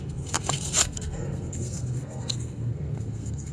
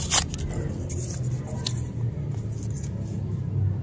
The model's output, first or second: first